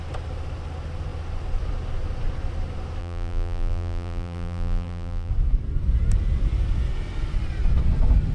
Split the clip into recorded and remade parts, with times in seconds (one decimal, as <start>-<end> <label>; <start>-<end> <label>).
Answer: 0.0-3.0 recorded; 3.0-5.3 remade; 5.3-8.3 recorded